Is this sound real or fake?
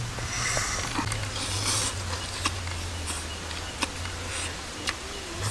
real